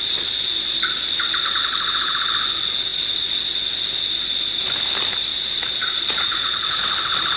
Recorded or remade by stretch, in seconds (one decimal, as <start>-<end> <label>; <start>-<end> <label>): 0.0-5.3 recorded; 5.3-6.8 remade; 6.8-7.4 recorded